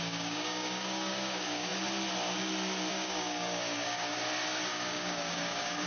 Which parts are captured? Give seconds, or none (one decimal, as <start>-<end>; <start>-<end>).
1.7-2.9; 4.2-4.7